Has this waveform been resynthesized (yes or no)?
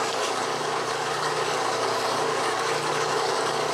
yes